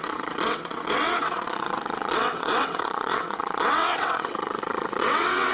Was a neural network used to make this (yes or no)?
yes